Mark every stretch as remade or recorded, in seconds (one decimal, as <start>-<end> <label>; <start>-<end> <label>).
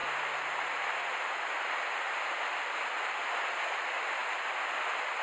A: 0.0-5.2 recorded